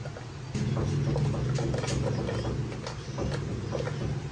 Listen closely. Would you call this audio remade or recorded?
recorded